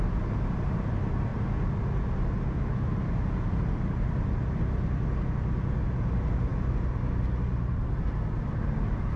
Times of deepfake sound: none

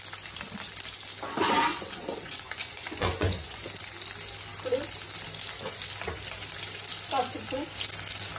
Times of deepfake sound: 1.7-3.6 (vocoder, Vocos)

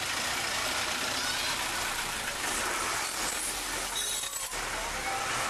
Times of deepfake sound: 0.6-2.8 (vocoder, BigVGAN v2)

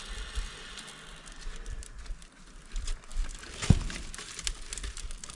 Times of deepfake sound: none

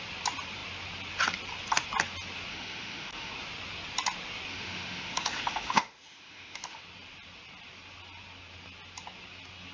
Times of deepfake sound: 2.5-3.3 (autoencoder, DAC-VAE); 4.5-6.8